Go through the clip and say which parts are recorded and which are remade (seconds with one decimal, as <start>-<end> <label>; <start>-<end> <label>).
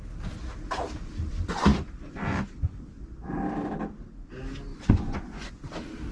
0.0-4.7 recorded; 4.7-5.5 remade; 5.5-6.1 recorded